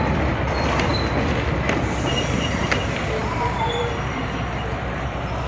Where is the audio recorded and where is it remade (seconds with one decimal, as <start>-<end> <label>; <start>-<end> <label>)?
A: 0.0-0.9 remade; 0.9-2.8 recorded; 2.8-5.5 remade